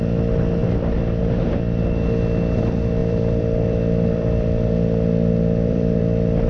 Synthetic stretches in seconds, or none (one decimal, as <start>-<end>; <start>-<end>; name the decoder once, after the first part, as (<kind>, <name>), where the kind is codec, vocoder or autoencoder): 3.0-6.5 (vocoder, BigVGAN v2)